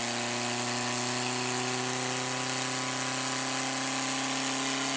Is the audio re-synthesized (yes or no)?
no